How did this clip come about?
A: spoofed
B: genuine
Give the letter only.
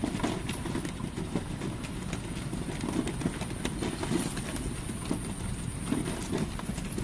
B